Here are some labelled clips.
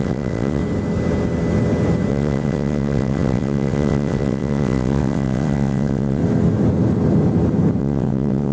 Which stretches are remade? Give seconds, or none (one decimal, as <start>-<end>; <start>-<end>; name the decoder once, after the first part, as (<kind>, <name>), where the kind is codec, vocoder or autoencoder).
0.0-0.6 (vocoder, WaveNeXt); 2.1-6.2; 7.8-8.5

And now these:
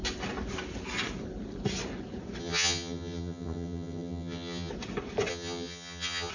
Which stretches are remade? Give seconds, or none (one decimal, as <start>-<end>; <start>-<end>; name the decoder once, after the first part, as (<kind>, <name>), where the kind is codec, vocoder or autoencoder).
2.4-4.7 (vocoder, HiFi-GAN); 5.3-6.3

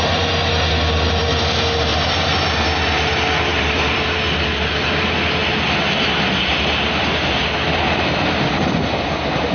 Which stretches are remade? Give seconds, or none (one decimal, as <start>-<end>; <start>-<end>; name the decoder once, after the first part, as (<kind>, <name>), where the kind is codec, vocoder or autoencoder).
3.5-4.0 (vocoder, BigVGAN v2)

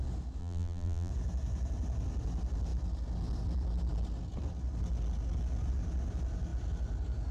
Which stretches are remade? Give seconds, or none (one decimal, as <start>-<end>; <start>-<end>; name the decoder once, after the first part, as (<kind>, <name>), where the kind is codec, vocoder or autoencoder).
0.4-1.1 (vocoder, BigVGAN v2)

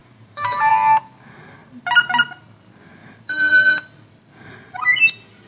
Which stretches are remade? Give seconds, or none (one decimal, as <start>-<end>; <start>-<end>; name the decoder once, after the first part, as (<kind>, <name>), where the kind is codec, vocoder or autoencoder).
0.0-0.7 (vocoder, BigVGAN v2); 1.6-2.2; 3.0-4.1

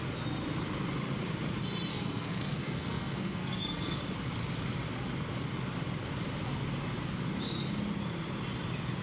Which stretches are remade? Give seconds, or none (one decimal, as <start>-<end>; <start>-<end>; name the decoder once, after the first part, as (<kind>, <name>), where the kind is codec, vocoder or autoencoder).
1.9-4.0 (codec, SNAC)